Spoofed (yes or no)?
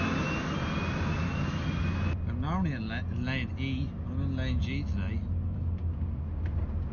no